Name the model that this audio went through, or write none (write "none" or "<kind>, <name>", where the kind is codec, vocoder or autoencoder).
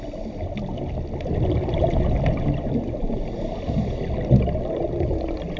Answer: none